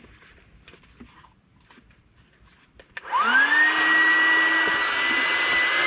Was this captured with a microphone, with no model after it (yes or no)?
yes